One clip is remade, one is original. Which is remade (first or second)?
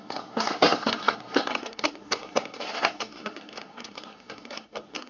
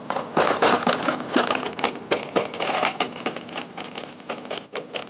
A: first